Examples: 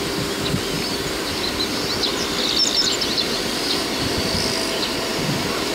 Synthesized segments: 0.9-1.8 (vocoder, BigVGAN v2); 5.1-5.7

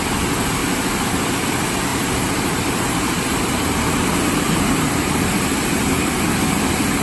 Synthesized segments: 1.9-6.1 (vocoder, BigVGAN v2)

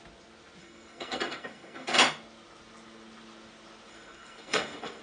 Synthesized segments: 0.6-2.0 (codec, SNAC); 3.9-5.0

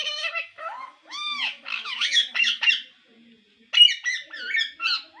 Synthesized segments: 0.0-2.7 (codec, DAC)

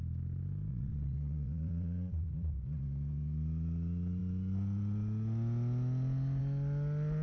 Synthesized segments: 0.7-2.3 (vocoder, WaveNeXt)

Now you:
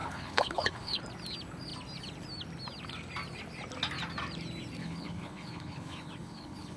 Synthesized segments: 0.0-1.0 (codec, HILCodec); 4.8-6.8

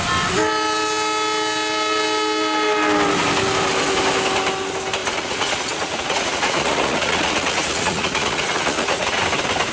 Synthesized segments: 5.0-9.2 (vocoder, Vocos)

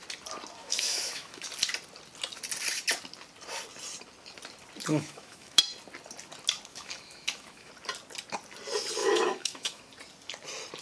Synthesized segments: 0.6-1.5 (autoencoder, DAC-VAE); 4.9-5.6; 6.7-7.7; 9.0-9.8